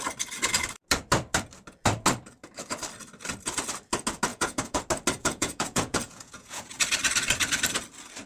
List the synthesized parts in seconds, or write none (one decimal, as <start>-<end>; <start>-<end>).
4.3-4.8; 5.2-6.7